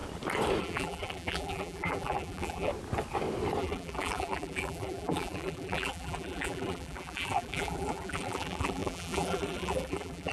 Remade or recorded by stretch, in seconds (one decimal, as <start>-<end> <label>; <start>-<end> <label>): 0.0-0.6 recorded; 0.6-2.7 remade; 2.7-3.6 recorded; 3.6-10.3 remade